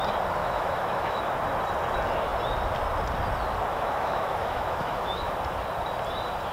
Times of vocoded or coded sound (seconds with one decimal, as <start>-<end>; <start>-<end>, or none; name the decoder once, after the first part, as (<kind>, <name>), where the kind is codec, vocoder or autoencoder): 0.4-1.2 (autoencoder, DAC-VAE); 3.7-5.3